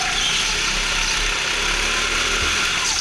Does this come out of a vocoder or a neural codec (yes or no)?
no